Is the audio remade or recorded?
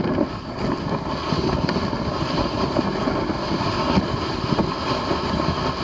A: recorded